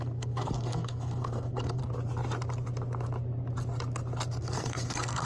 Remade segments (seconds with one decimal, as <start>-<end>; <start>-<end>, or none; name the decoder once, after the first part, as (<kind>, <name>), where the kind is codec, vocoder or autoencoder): 0.0-1.8 (codec, SNAC); 4.4-5.3